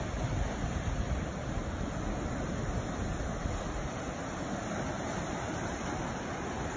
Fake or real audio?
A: real